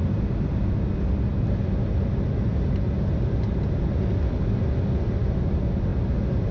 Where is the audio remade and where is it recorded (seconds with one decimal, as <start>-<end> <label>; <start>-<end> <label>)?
0.0-6.5 recorded